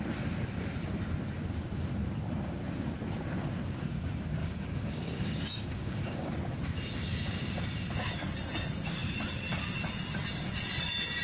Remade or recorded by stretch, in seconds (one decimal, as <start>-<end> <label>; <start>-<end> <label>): 0.0-4.4 recorded; 4.4-6.3 remade; 6.3-11.2 recorded